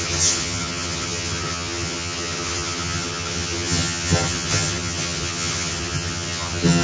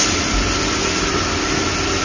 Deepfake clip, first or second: first